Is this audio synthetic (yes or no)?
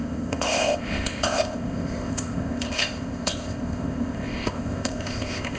yes